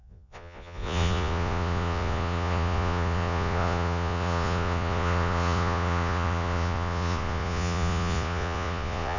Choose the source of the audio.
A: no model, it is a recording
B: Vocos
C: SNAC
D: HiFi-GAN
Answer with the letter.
B